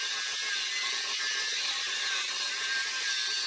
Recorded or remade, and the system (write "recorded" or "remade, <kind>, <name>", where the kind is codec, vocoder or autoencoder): recorded